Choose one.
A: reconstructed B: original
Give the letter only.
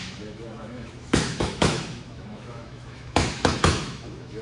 A